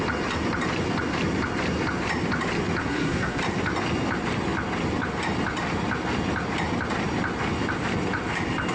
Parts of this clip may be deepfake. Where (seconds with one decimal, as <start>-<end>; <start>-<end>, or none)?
2.8-3.4